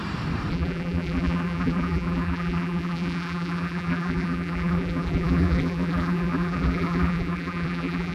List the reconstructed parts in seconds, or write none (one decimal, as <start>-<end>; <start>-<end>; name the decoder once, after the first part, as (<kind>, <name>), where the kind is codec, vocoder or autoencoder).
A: 0.5-8.1 (vocoder, BigVGAN v2)